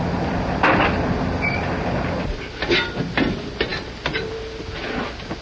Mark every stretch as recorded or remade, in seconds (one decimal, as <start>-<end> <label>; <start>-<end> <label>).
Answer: 0.0-5.4 recorded